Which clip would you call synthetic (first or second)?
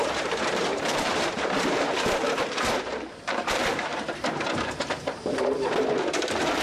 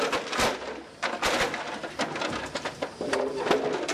first